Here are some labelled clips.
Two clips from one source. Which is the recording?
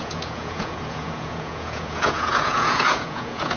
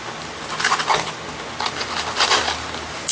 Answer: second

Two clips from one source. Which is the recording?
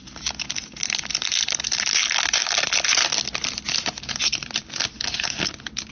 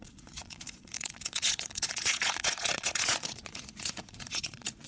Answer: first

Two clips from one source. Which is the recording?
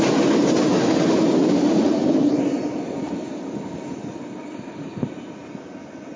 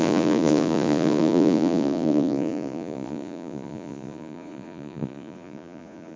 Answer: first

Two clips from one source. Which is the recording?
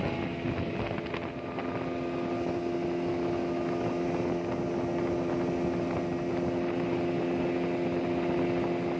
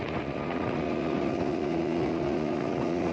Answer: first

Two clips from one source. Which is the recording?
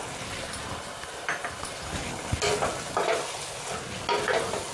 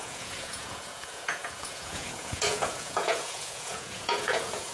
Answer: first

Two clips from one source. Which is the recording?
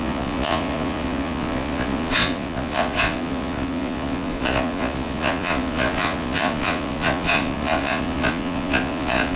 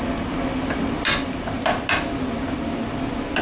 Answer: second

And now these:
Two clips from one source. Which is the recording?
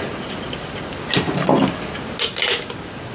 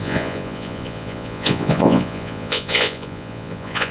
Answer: first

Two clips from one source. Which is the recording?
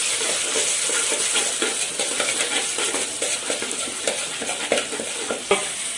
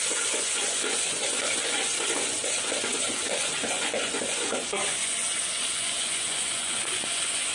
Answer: first